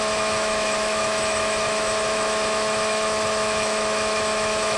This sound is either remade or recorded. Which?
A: remade